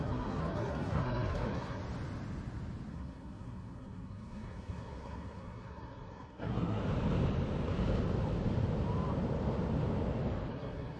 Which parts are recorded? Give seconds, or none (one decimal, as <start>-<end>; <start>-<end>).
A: 1.8-2.9; 6.8-10.5